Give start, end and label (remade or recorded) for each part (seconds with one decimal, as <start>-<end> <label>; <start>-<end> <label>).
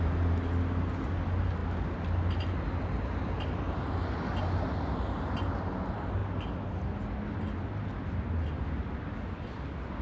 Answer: 0.0-10.0 recorded